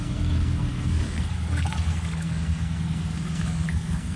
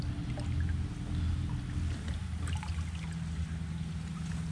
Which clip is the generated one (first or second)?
first